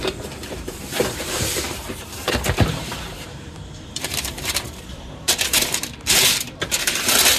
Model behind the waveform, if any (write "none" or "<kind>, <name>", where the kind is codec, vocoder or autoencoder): vocoder, BigVGAN v2